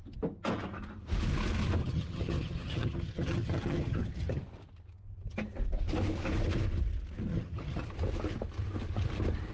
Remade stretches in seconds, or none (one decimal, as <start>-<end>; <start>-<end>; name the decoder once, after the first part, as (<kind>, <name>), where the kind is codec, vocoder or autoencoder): 1.8-4.4 (vocoder, HiFi-GAN); 7.3-7.9